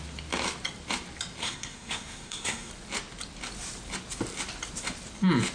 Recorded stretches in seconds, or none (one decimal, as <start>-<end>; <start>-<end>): 0.0-1.4; 2.7-5.5